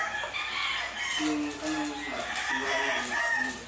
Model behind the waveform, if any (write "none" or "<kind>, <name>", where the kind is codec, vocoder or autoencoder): none